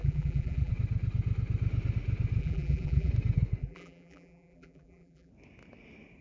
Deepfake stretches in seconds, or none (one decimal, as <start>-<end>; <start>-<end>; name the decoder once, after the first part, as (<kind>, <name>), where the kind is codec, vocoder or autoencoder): 0.0-0.7 (vocoder, BigVGAN v2); 2.4-3.1; 3.6-5.3